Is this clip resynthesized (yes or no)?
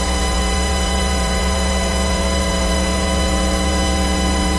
yes